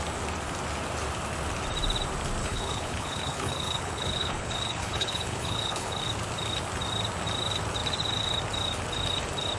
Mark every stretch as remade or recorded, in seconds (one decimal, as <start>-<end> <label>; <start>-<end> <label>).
0.0-2.4 recorded; 2.4-6.0 remade; 6.0-9.6 recorded